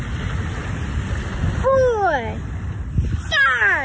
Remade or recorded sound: recorded